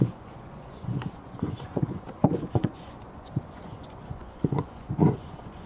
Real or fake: fake